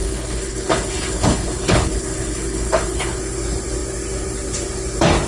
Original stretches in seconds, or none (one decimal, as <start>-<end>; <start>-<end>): 3.2-5.3